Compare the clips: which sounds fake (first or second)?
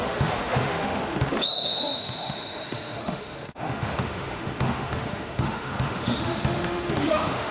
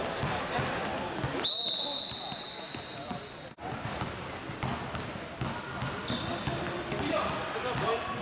first